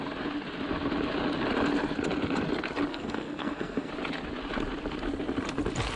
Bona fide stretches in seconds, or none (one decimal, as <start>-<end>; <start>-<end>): 0.0-2.9; 3.9-6.0